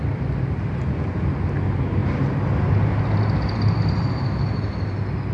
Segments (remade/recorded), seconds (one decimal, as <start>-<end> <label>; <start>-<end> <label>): 0.0-5.3 recorded